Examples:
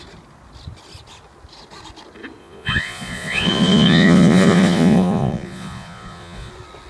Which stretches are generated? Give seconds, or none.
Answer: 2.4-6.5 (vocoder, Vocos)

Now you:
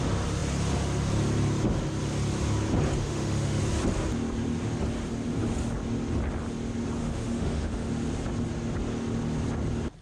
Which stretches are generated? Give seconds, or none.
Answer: 3.0-3.6 (autoencoder, DAC-VAE); 7.0-7.9

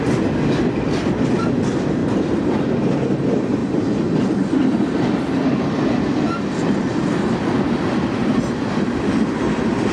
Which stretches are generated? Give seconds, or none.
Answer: 2.0-2.6 (vocoder, BigVGAN v2)

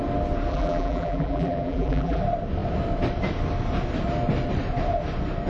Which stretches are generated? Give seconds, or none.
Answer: 0.5-2.2 (vocoder, BigVGAN v2)

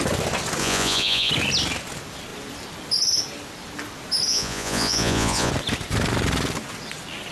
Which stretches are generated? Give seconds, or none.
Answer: 0.6-1.3 (vocoder, Vocos); 4.3-5.5